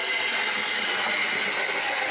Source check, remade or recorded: recorded